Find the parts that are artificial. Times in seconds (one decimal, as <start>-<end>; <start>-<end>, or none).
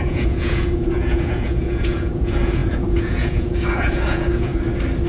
0.0-4.5